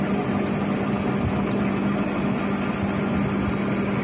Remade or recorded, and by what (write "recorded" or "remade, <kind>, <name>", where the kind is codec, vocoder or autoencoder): recorded